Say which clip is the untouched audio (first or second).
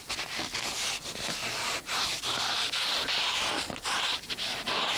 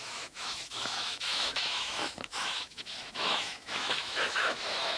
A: first